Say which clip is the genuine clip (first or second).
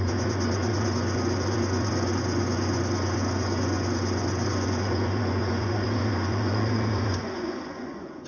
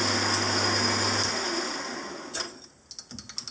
second